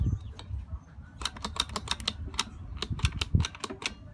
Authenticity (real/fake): real